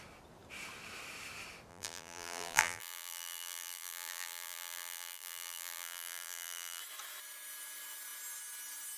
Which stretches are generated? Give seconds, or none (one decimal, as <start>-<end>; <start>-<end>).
1.7-6.8